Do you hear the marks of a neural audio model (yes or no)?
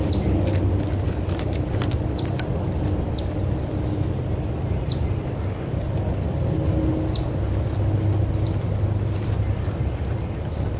no